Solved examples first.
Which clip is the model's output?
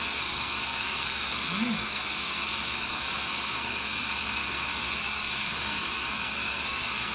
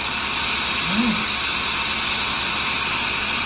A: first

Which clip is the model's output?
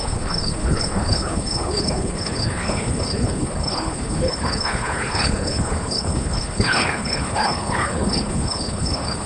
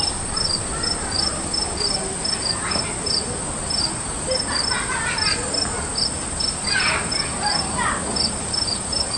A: first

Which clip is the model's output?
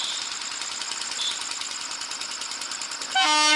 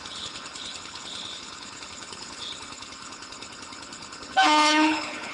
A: second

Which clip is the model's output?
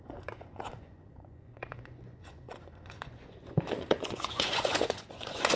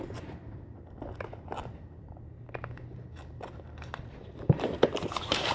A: first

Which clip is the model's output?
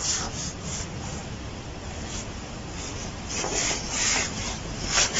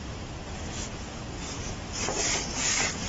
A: first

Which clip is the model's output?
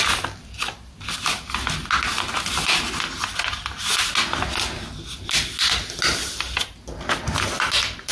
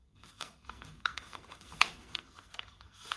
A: second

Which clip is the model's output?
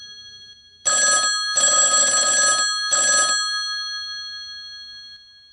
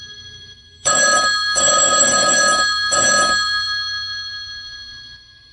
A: second